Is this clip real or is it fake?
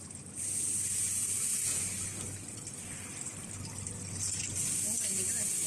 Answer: real